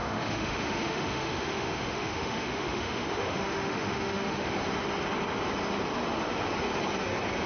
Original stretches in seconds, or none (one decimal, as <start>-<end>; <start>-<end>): 4.5-7.5